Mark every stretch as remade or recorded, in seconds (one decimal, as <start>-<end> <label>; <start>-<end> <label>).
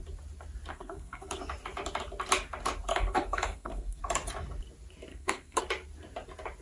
0.0-0.7 recorded; 0.7-1.4 remade; 1.4-2.9 recorded; 2.9-4.0 remade; 4.0-5.1 recorded; 5.1-5.6 remade; 5.6-6.6 recorded